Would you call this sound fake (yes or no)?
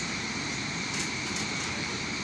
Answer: yes